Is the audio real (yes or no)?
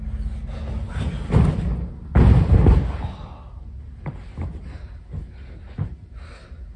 yes